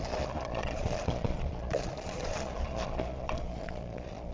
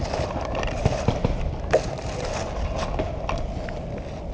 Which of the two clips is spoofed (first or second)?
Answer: first